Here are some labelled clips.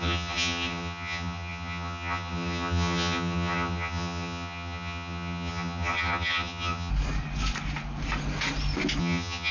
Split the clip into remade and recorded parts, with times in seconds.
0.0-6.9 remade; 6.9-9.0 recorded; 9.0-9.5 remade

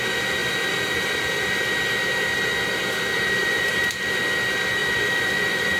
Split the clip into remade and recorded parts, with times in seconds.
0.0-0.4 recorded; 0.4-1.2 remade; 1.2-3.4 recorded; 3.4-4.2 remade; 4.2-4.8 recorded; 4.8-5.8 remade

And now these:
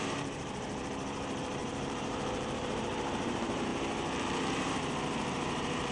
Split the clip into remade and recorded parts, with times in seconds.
0.0-3.7 remade; 3.7-4.5 recorded; 4.5-5.9 remade